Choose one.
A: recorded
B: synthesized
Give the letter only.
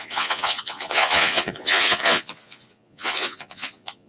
B